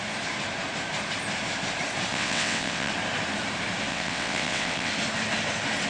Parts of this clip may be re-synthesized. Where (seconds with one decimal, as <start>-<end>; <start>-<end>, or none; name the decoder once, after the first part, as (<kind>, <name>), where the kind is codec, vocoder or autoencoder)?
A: 2.1-2.9 (vocoder, WaveNeXt); 3.9-4.9

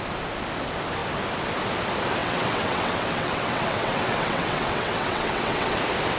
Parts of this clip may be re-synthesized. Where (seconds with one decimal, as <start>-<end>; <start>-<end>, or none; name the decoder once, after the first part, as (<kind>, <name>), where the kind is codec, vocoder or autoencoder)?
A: 2.2-5.8 (vocoder, WaveNeXt)

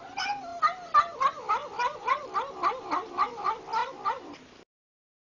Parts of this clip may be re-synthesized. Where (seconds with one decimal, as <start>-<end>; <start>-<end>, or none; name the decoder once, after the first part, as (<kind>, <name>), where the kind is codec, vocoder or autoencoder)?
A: none

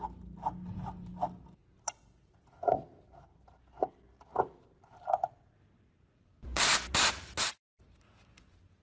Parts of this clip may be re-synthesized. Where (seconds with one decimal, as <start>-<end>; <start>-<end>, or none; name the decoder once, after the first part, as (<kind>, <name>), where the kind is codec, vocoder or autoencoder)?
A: none

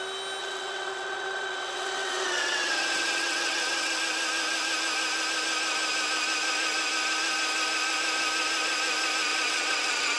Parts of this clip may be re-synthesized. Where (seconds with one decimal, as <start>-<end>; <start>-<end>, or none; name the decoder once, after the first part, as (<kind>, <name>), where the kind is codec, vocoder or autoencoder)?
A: 0.4-3.9 (vocoder, WaveNeXt); 9.3-10.2

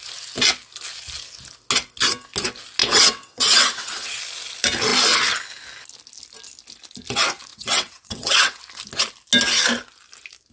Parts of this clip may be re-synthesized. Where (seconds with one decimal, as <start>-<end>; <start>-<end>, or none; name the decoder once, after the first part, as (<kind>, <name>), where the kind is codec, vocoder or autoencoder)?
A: 2.8-4.2 (vocoder, WaveNeXt); 7.5-8.6

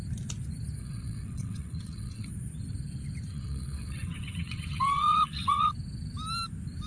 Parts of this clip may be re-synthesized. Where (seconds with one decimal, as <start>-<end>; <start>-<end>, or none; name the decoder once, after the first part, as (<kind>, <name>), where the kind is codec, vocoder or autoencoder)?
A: 0.8-2.3 (vocoder, WaveNeXt); 3.3-5.7

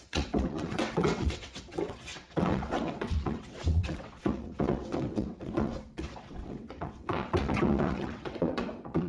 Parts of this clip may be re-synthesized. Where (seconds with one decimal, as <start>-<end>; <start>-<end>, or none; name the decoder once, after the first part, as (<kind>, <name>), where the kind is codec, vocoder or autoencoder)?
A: 0.0-9.1 (vocoder, WaveNeXt)